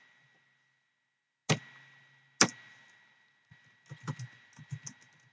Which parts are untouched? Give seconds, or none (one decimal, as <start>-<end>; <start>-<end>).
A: 0.0-5.3

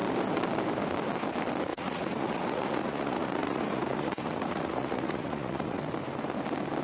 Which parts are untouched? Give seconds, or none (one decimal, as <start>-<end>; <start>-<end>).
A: 0.0-1.7; 5.8-6.8

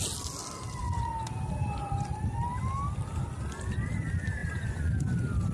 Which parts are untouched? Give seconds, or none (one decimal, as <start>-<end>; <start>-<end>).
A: 0.0-4.4; 4.9-5.5

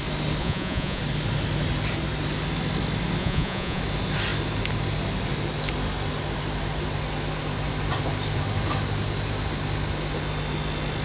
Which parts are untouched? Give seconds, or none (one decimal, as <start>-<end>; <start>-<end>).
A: 0.0-0.4; 1.0-3.2; 3.8-11.0

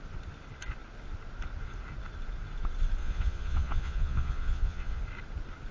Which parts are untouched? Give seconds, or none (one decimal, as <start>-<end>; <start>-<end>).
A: 0.0-3.0; 5.0-5.7

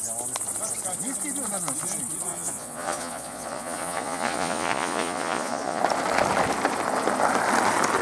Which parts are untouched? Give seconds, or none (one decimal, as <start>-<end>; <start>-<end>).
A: 0.0-2.3; 5.8-8.0

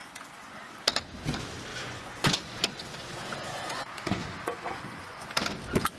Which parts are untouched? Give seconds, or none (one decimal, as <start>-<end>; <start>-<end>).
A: 0.7-1.7; 5.3-6.0